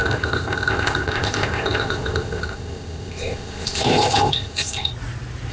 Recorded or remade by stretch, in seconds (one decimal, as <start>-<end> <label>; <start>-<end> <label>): 0.0-4.9 remade; 4.9-5.5 recorded